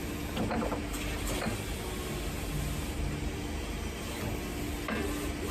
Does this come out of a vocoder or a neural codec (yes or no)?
no